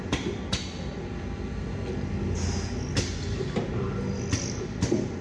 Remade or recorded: recorded